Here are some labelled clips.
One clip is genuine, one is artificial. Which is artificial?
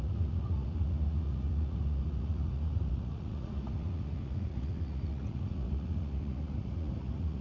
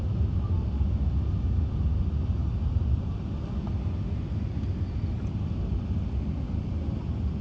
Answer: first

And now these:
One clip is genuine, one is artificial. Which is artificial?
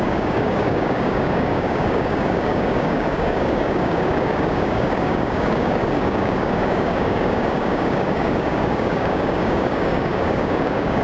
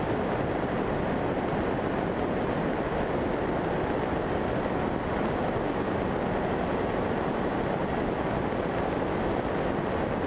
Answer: first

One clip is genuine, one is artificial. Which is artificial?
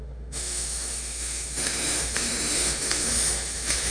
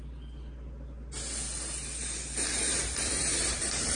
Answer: first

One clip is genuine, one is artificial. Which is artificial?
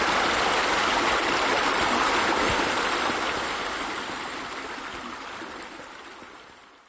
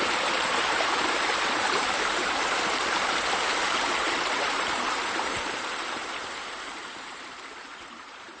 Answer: second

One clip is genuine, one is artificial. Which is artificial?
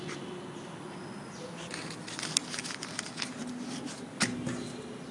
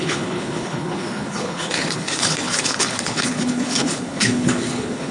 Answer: second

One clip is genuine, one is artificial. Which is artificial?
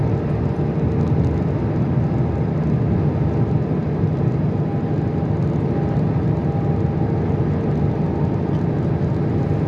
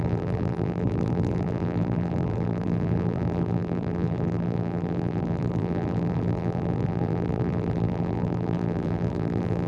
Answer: second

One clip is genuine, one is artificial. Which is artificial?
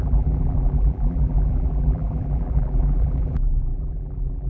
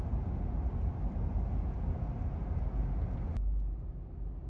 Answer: first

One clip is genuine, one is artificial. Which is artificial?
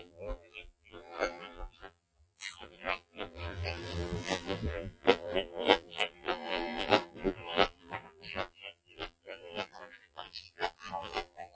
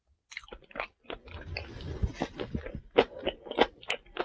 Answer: first